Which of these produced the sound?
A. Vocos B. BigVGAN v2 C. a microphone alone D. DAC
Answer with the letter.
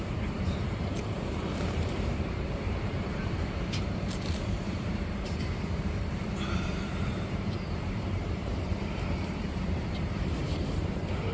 B